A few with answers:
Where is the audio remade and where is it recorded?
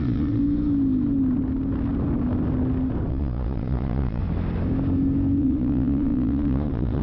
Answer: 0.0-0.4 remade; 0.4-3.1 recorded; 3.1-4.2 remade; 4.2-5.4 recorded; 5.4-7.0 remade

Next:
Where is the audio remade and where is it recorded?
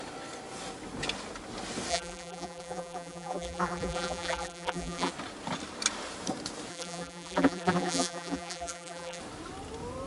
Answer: 0.0-1.9 recorded; 1.9-5.1 remade; 5.1-6.7 recorded; 6.7-9.2 remade; 9.2-10.1 recorded